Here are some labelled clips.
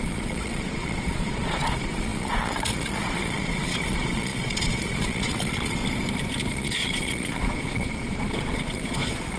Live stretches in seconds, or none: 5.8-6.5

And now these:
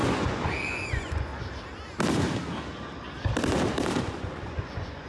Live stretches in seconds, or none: 1.3-4.0

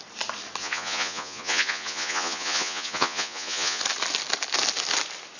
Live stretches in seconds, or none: 0.0-0.6; 3.8-5.4

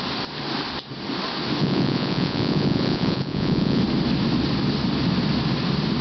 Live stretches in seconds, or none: 0.0-1.6; 3.8-6.0